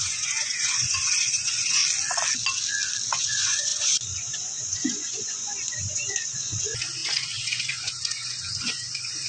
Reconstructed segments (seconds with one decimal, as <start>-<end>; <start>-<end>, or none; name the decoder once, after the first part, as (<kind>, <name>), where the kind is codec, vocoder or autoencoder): 0.0-1.8 (vocoder, Vocos); 3.2-9.3